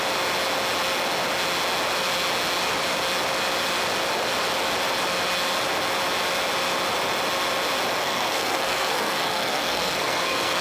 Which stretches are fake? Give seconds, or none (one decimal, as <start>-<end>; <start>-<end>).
8.0-10.6